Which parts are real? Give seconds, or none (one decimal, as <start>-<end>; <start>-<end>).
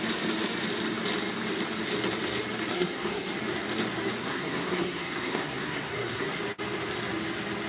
0.0-2.7; 3.4-4.2; 6.4-7.7